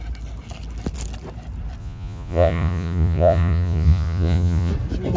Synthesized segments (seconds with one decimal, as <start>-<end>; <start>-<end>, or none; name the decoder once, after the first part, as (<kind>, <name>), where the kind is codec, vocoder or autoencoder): 1.8-4.7 (vocoder, Vocos)

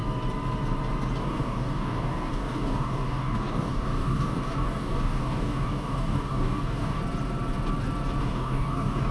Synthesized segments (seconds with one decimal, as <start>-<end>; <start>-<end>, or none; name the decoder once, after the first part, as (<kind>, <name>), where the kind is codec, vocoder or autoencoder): 1.2-7.0 (codec, DAC); 8.2-9.1

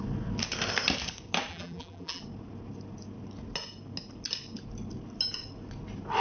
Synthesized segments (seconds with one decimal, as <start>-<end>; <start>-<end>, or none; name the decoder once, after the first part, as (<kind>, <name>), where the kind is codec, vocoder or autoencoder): 1.5-2.2 (vocoder, BigVGAN v2)

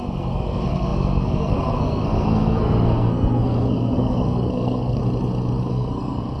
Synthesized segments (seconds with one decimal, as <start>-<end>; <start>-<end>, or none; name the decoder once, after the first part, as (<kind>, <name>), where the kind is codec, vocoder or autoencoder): 0.0-5.0 (codec, SNAC); 5.7-6.4

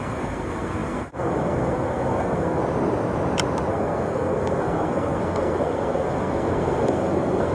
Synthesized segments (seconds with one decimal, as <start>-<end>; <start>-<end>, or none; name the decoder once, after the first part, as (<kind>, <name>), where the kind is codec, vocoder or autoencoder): 0.0-2.6 (codec, SNAC); 3.7-7.5